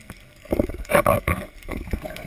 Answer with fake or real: fake